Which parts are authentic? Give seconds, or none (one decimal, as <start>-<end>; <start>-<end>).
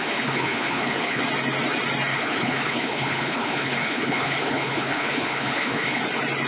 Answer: 1.2-2.1; 6.0-6.5